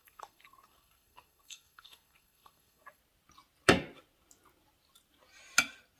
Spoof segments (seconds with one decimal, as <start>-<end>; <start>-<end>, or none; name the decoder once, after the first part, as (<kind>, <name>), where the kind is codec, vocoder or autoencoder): 0.0-3.0 (codec, SNAC)